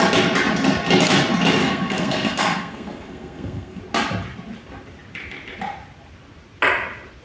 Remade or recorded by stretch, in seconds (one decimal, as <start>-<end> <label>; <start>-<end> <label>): 0.0-1.6 recorded; 1.6-3.8 remade; 3.8-7.2 recorded